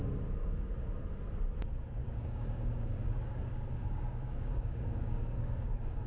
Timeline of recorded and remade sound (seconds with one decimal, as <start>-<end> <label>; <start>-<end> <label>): 0.0-0.4 recorded; 0.4-0.9 remade; 0.9-2.0 recorded; 2.0-6.1 remade